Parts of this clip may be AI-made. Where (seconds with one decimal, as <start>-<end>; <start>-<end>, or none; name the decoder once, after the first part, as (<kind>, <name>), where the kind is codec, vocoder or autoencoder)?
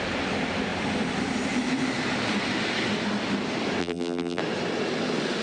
3.8-4.4 (vocoder, BigVGAN v2)